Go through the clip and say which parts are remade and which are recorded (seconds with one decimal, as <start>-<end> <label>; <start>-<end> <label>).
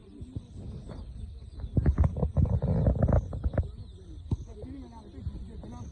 0.0-5.9 recorded